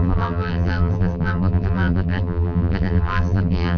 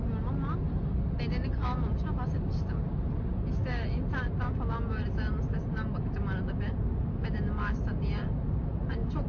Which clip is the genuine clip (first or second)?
second